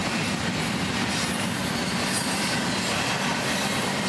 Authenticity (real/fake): fake